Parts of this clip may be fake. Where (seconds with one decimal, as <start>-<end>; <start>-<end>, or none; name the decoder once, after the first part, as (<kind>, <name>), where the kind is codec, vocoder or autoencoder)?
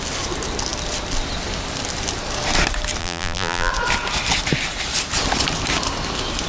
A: 3.0-3.7 (vocoder, BigVGAN v2)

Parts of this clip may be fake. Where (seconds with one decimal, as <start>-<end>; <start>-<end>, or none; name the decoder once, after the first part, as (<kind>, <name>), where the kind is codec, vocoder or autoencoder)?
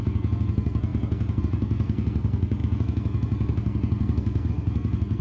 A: 0.0-5.2 (codec, SNAC)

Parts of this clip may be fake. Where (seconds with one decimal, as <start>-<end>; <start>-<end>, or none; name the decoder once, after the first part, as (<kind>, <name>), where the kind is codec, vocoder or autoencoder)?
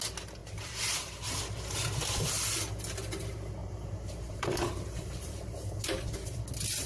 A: 0.4-1.4 (vocoder, BigVGAN v2); 3.6-6.4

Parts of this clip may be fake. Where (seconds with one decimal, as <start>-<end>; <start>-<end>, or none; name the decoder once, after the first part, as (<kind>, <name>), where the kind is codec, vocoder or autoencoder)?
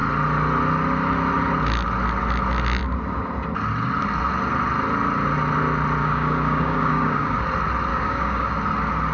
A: 6.0-7.4 (codec, DAC); 7.9-8.5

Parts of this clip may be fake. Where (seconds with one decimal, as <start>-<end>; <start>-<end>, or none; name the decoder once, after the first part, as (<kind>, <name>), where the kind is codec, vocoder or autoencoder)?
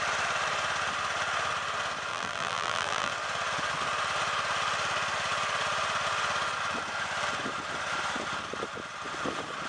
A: 2.1-3.1 (vocoder, BigVGAN v2)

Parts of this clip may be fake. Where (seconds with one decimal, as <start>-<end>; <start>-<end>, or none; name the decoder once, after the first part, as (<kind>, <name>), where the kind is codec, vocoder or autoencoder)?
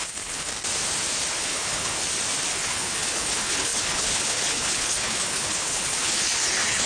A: 0.0-0.5 (codec, HILCodec); 1.3-2.0; 2.5-6.9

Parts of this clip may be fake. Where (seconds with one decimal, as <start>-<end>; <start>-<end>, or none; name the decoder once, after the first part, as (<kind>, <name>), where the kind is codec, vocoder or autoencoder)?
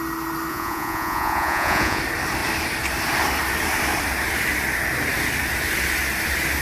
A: 0.5-2.0 (vocoder, Vocos)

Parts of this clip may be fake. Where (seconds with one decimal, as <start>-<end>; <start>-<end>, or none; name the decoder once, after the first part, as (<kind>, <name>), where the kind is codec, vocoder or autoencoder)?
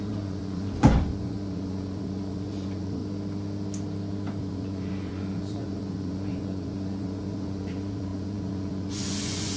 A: 0.0-3.0 (vocoder, Vocos); 4.4-9.6